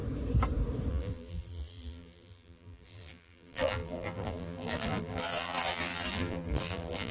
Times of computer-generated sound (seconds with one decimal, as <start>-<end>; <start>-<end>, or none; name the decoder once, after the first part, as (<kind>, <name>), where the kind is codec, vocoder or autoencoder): 0.9-7.1 (vocoder, BigVGAN v2)